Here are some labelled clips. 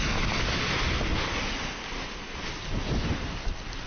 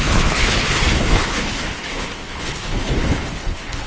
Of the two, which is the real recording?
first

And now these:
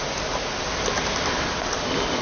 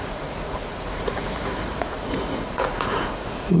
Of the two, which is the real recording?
first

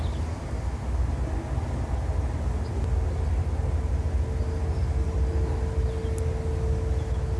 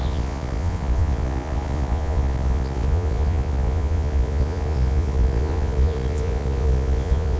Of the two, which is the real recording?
first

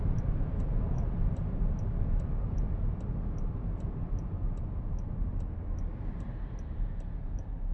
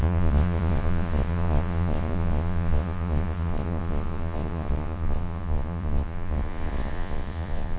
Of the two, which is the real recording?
first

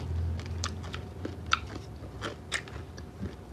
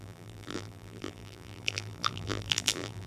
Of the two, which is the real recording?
first